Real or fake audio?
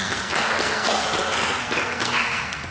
fake